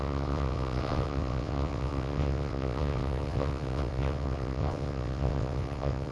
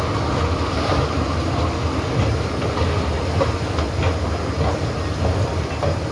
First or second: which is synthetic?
first